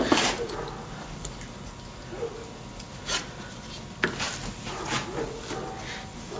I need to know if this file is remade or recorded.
recorded